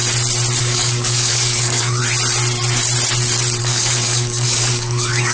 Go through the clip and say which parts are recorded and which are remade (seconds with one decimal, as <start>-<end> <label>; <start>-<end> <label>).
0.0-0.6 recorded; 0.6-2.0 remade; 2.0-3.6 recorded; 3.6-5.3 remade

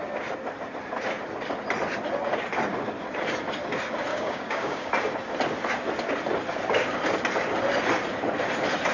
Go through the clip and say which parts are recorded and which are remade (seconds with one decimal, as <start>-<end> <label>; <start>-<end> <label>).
0.0-4.1 recorded; 4.1-4.9 remade; 4.9-8.9 recorded

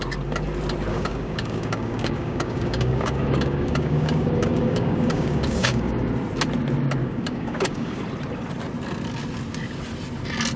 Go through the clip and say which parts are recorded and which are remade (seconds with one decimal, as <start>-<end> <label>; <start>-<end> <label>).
0.0-0.9 recorded; 0.9-6.1 remade; 6.1-7.0 recorded; 7.0-8.0 remade; 8.0-10.6 recorded

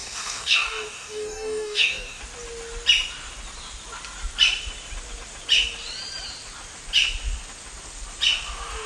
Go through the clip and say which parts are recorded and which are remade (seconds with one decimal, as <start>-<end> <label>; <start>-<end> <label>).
0.0-2.2 remade; 2.2-8.9 recorded

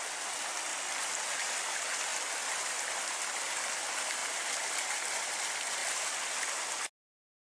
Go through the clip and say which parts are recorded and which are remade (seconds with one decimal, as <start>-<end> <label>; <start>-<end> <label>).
0.0-7.6 recorded

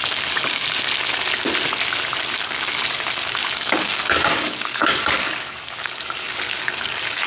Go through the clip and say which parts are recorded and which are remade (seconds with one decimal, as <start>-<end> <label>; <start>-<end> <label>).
0.0-0.6 remade; 0.6-2.3 recorded; 2.3-7.3 remade

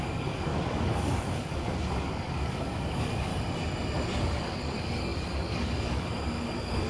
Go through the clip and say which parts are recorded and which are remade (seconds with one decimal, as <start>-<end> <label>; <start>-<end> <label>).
0.0-3.3 remade; 3.3-4.2 recorded; 4.2-6.9 remade